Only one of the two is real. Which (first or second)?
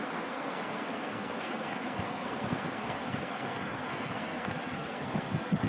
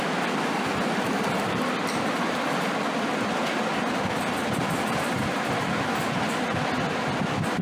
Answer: second